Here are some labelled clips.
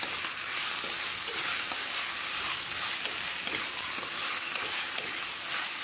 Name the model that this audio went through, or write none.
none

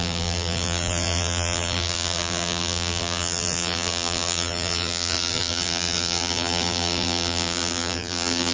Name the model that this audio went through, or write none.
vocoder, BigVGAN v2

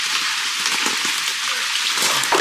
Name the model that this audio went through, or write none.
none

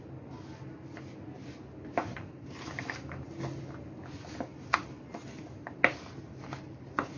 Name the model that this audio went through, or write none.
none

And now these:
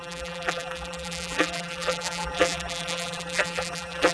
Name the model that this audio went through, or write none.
vocoder, BigVGAN v2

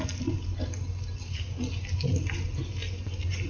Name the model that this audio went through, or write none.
vocoder, BigVGAN v2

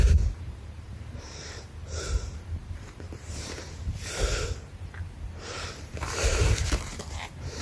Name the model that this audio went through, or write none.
vocoder, BigVGAN v2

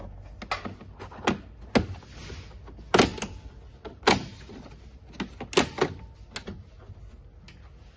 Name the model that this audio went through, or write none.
none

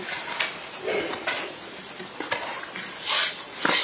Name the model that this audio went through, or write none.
none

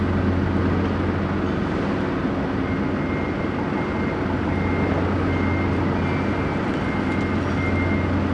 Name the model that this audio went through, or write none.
none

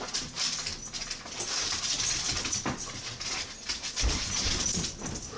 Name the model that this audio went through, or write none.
none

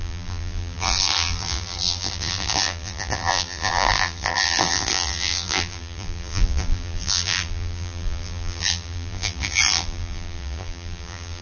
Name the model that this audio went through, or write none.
vocoder, BigVGAN v2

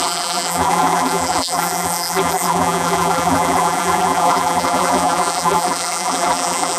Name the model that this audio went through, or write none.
vocoder, BigVGAN v2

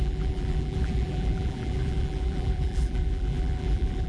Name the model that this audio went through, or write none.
vocoder, BigVGAN v2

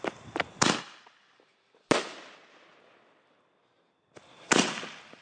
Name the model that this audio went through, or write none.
none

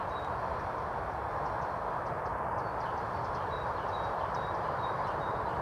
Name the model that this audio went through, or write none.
vocoder, BigVGAN v2